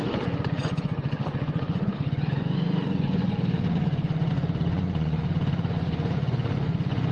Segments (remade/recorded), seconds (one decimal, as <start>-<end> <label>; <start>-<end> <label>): 0.0-7.1 remade